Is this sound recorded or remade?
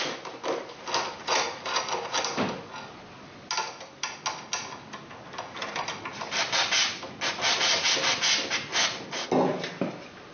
recorded